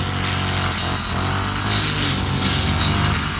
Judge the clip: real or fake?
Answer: real